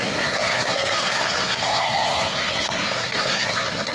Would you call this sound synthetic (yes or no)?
yes